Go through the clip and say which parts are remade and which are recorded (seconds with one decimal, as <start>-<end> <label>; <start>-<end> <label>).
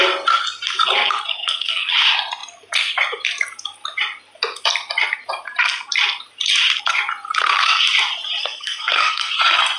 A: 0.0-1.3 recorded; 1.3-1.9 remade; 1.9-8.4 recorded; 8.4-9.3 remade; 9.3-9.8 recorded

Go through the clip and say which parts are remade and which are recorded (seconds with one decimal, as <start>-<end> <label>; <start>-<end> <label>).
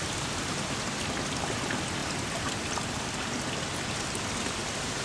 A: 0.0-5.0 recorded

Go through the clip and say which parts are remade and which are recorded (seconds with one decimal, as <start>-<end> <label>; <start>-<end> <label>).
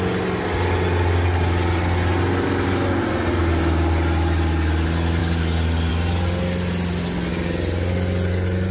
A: 0.0-8.7 recorded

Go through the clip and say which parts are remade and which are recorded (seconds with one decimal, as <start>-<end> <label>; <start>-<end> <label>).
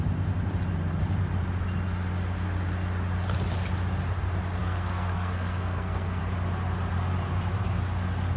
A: 0.0-4.6 recorded; 4.6-6.2 remade; 6.2-8.4 recorded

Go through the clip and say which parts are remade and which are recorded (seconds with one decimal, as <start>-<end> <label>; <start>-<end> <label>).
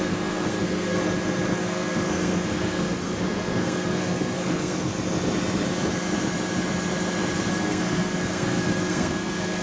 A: 0.0-1.0 remade; 1.0-1.6 recorded; 1.6-4.9 remade; 4.9-7.5 recorded; 7.5-9.6 remade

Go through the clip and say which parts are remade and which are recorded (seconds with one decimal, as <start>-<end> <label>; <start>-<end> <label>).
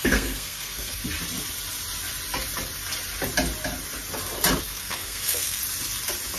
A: 0.0-1.0 remade; 1.0-4.6 recorded; 4.6-5.6 remade; 5.6-6.4 recorded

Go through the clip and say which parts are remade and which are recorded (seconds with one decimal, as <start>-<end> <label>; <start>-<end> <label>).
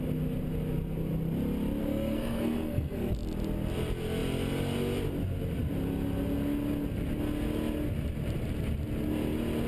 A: 0.0-1.8 recorded; 1.8-3.1 remade; 3.1-9.7 recorded